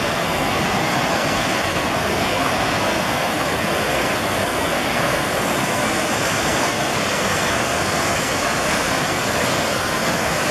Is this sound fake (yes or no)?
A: yes